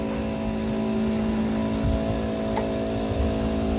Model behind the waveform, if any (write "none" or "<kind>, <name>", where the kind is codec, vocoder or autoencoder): none